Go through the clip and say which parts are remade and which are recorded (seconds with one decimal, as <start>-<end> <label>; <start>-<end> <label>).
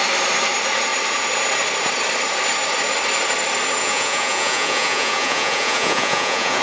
0.0-3.8 recorded; 3.8-6.6 remade